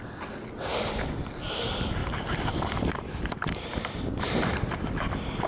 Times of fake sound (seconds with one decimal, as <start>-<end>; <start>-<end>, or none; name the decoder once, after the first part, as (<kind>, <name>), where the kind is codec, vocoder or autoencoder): 2.0-4.5 (vocoder, BigVGAN v2)